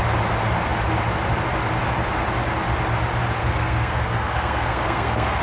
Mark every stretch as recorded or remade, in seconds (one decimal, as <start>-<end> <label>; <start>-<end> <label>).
0.0-3.4 recorded; 3.4-5.4 remade